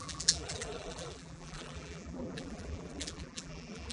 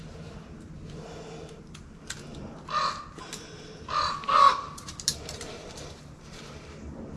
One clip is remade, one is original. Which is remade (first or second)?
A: first